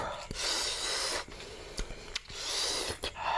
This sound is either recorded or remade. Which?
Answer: recorded